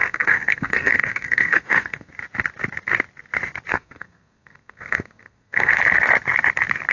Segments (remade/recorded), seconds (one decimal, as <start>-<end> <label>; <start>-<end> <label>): 0.0-2.1 remade; 2.1-3.7 recorded; 3.7-5.7 remade; 5.7-6.9 recorded